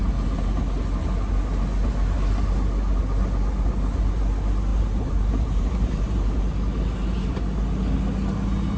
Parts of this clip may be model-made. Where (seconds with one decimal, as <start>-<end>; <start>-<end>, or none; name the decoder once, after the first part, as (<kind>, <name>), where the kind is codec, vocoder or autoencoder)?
4.7-6.4 (vocoder, BigVGAN v2)